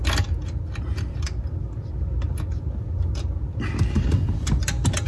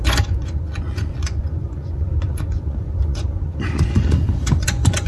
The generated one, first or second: second